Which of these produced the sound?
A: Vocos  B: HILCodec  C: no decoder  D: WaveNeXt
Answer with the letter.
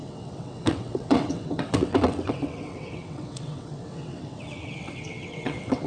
D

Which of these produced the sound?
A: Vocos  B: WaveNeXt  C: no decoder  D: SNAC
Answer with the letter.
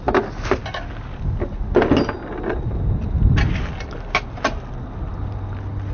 C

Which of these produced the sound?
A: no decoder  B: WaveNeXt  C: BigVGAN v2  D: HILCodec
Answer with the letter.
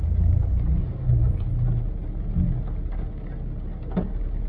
A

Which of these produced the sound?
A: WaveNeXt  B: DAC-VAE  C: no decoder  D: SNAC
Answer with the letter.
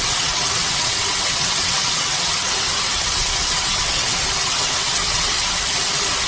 A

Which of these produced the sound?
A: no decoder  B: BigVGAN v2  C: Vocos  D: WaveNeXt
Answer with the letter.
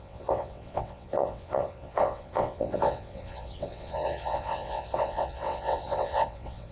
D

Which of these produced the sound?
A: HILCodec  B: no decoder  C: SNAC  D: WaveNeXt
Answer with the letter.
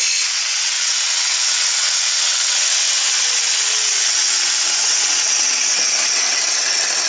D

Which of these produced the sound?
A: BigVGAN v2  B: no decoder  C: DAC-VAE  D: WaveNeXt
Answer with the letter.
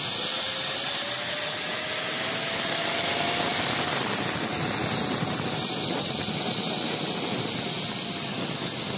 B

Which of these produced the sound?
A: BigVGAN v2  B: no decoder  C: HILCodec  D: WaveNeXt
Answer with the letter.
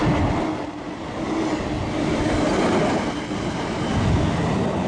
B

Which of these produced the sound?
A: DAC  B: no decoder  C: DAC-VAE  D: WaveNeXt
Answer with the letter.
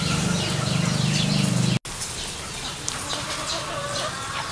B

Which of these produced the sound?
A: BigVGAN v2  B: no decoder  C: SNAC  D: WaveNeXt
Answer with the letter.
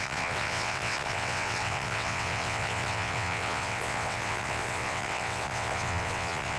D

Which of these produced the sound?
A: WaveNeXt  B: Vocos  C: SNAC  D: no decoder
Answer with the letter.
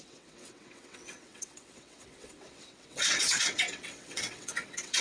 A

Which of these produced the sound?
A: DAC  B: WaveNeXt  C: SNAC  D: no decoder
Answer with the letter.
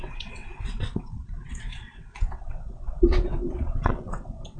B